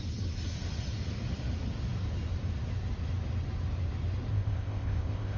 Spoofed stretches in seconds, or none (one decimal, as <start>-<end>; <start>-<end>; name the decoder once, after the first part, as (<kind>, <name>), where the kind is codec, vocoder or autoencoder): 4.3-5.4 (codec, ZipCodec)